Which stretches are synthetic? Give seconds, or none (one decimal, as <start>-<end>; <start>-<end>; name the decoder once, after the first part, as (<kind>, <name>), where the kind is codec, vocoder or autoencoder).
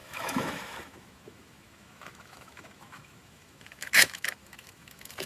0.0-5.3 (autoencoder, DAC-VAE)